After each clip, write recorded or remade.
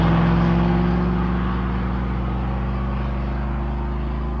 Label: recorded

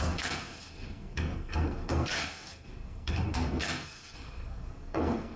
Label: remade